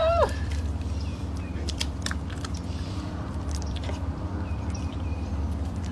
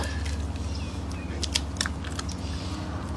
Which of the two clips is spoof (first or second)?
first